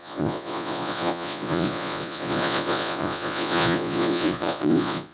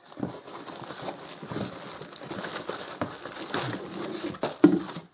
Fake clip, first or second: first